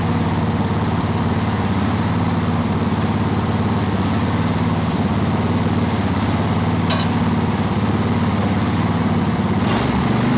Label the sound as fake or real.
real